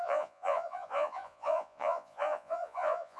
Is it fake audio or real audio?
fake